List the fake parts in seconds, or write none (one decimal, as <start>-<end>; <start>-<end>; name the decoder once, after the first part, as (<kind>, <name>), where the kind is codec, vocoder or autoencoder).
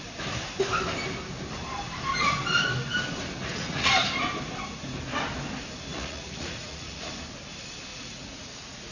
3.4-3.9 (vocoder, Vocos); 5.9-7.1; 7.9-8.9